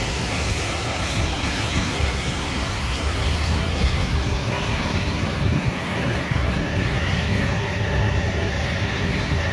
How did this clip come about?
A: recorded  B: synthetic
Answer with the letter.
B